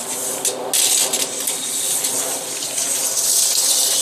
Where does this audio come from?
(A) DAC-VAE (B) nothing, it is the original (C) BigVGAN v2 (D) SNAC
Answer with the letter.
B